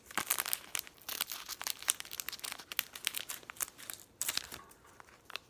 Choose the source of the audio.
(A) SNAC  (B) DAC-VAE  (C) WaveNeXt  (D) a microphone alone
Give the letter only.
D